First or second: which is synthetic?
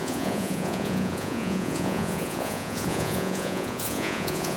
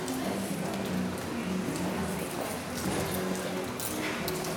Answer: first